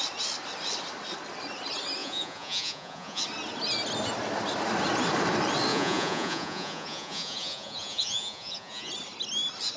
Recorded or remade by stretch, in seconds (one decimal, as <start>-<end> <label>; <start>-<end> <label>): 0.0-2.0 recorded; 2.0-3.2 remade; 3.2-5.7 recorded; 5.7-8.9 remade; 8.9-9.8 recorded